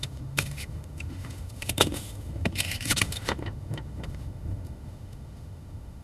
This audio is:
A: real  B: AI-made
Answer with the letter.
B